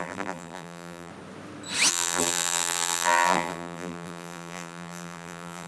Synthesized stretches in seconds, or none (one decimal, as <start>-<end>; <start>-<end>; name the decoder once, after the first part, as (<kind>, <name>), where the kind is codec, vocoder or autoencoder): 0.0-1.1 (vocoder, BigVGAN v2); 1.9-5.7